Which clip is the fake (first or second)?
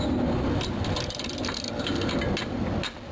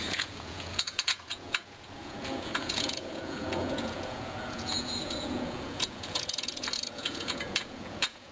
second